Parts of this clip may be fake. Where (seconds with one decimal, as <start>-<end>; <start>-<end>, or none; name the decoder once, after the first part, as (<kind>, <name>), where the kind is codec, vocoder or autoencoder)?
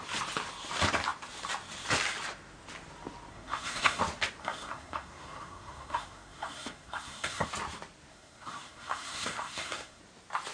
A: 3.3-4.0 (codec, SNAC); 4.4-7.5; 8.1-10.0